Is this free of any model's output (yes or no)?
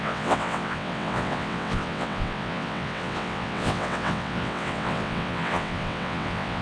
no